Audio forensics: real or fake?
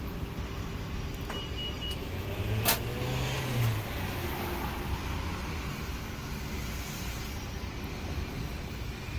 real